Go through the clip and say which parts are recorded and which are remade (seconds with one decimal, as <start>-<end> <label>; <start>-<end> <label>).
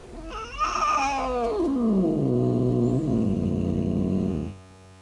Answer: 0.0-4.3 recorded; 4.3-5.0 remade